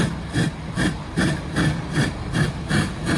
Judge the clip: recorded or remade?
remade